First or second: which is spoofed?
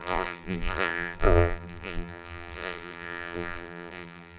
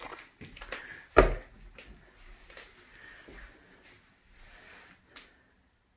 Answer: first